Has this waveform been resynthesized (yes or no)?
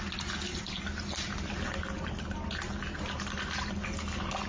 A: no